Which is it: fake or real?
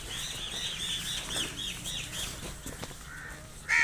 real